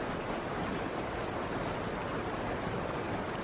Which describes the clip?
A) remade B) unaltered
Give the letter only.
B